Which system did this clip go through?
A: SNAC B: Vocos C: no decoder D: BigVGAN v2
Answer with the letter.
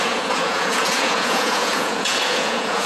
B